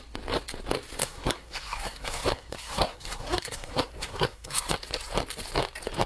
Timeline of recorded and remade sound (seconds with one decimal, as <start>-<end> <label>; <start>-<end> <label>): 0.0-1.0 recorded; 1.0-4.7 remade; 4.7-6.1 recorded